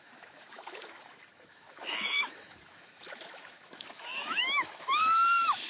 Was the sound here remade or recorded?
remade